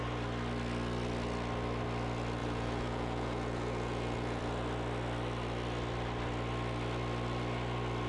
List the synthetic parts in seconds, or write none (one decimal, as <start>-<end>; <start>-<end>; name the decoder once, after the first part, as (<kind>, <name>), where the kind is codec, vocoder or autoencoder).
2.4-4.4 (vocoder, Vocos)

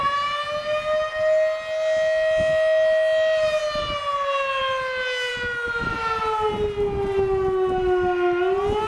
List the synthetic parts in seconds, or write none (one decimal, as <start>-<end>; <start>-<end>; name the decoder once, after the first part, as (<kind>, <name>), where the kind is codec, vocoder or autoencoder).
none

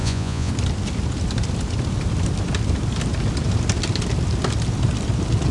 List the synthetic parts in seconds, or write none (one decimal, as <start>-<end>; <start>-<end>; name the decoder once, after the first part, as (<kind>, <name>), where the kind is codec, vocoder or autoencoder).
0.0-0.5 (vocoder, Vocos)

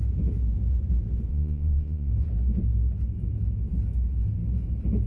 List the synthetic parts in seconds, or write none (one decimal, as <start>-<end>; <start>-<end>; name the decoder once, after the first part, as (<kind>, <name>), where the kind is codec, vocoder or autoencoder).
1.3-2.1 (vocoder, Vocos)

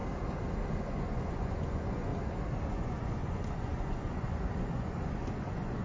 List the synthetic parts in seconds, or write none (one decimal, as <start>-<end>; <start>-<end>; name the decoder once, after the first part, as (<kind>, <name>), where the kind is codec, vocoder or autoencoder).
0.8-2.1 (vocoder, Vocos); 2.7-5.8

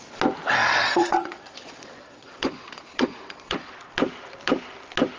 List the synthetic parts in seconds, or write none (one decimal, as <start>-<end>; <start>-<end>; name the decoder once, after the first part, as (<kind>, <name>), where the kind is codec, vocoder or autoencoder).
0.6-3.7 (vocoder, Vocos)

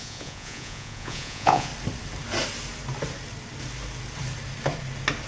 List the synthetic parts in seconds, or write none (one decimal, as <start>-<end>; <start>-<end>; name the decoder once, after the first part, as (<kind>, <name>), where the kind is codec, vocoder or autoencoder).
0.0-1.7 (vocoder, Vocos)